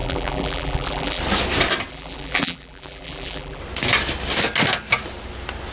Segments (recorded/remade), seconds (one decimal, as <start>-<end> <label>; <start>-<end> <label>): 0.0-1.2 remade; 1.2-1.9 recorded; 1.9-3.6 remade; 3.6-5.7 recorded